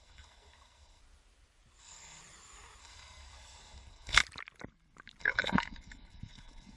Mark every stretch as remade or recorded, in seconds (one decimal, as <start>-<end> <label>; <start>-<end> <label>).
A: 0.0-1.0 remade; 1.0-1.8 recorded; 1.8-2.2 remade; 2.2-2.8 recorded; 2.8-4.2 remade; 4.2-5.2 recorded; 5.2-6.8 remade